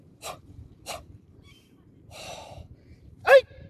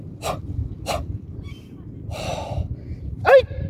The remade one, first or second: first